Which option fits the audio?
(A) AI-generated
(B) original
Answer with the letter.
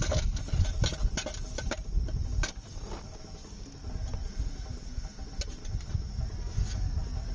B